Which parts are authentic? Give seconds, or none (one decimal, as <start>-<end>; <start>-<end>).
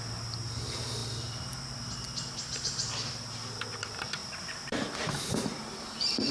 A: 0.0-4.2